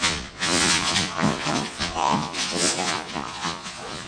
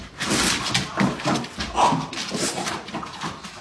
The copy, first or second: first